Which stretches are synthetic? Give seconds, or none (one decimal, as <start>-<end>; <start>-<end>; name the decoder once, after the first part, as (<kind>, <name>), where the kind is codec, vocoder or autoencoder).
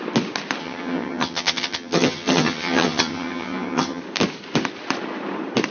0.6-4.0 (vocoder, HiFi-GAN)